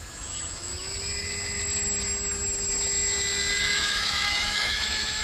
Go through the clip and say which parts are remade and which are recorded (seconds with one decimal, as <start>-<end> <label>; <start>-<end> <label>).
0.0-0.7 remade; 0.7-3.6 recorded; 3.6-5.2 remade